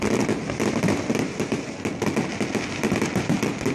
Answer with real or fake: real